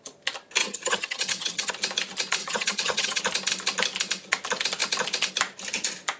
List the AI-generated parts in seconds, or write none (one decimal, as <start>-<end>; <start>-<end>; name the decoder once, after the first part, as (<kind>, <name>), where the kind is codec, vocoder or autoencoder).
0.6-1.7 (vocoder, HiFi-GAN); 2.4-3.2